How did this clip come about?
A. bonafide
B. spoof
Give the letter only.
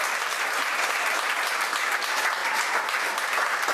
A